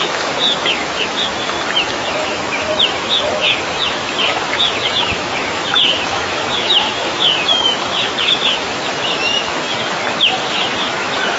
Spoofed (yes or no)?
yes